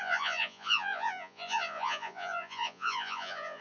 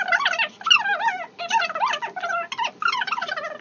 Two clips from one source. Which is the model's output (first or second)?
first